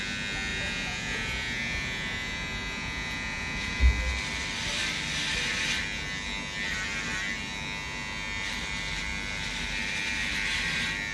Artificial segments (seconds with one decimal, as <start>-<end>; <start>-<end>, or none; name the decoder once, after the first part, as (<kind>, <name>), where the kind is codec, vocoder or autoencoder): 0.5-3.8 (vocoder, Vocos)